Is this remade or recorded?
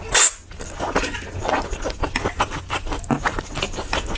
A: recorded